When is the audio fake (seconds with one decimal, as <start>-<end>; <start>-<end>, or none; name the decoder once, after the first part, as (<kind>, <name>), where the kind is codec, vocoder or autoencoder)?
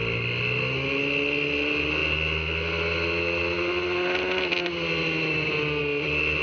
none